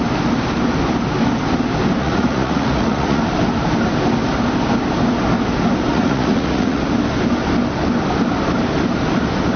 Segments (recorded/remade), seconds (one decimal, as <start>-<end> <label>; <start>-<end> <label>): 0.0-2.0 recorded; 2.0-3.2 remade; 3.2-5.9 recorded; 5.9-6.8 remade; 6.8-9.6 recorded